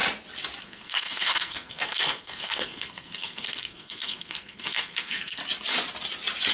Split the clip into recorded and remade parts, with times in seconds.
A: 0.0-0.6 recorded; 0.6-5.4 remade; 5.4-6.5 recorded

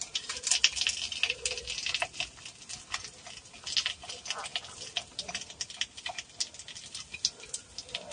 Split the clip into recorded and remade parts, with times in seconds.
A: 0.0-8.1 recorded

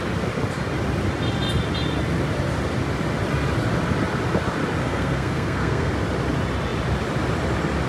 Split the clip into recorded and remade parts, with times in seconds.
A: 0.0-4.8 recorded; 4.8-5.9 remade; 5.9-7.9 recorded

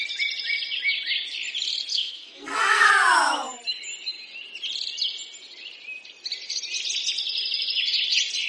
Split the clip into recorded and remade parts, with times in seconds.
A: 0.0-1.9 recorded; 1.9-2.9 remade; 2.9-8.5 recorded

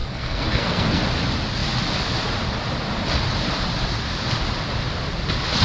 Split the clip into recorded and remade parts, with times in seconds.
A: 0.0-1.0 remade; 1.0-5.6 recorded